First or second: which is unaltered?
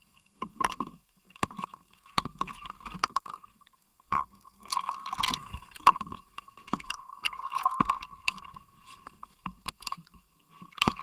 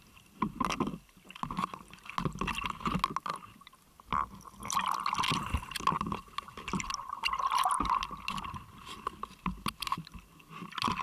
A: second